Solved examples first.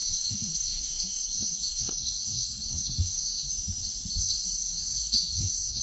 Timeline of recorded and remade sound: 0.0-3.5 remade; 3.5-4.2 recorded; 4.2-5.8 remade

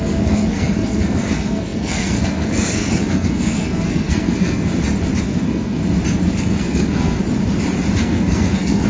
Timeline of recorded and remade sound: 0.0-4.7 remade; 4.7-5.2 recorded; 5.2-5.8 remade; 5.8-6.4 recorded; 6.4-7.2 remade; 7.2-8.0 recorded; 8.0-8.9 remade

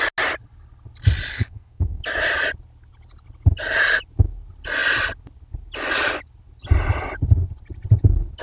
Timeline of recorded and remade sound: 0.0-1.3 recorded; 1.3-2.0 remade; 2.0-8.4 recorded

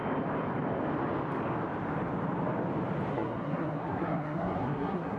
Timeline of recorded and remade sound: 0.0-3.1 recorded; 3.1-5.2 remade

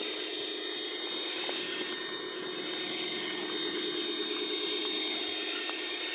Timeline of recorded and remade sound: 0.0-6.1 recorded

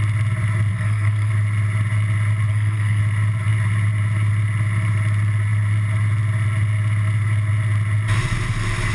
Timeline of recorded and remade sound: 0.0-0.7 recorded; 0.7-1.3 remade; 1.3-2.5 recorded; 2.5-3.0 remade; 3.0-8.9 recorded